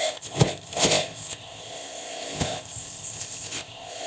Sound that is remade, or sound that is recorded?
remade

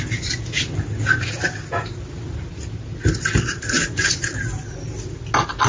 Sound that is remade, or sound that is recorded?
recorded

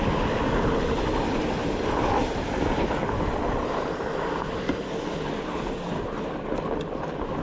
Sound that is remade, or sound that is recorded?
recorded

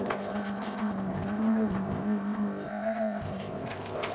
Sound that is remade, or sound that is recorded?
remade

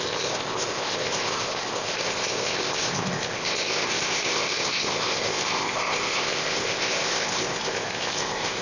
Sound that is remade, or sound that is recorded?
remade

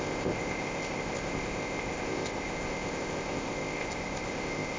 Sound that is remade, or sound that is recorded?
remade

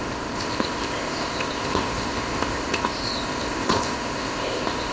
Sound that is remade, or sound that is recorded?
remade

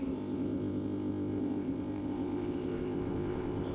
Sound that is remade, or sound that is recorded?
remade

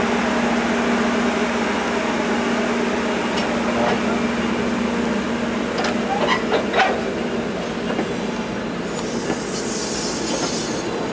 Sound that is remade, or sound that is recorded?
recorded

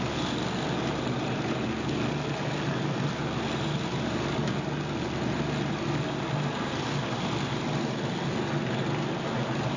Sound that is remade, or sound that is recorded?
recorded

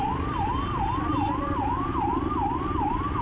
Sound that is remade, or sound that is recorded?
recorded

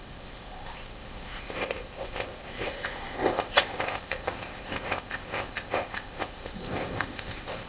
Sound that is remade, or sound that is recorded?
remade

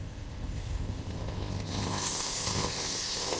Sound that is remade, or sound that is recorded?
remade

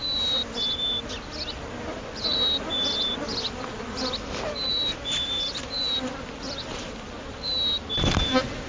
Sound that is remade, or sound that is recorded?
recorded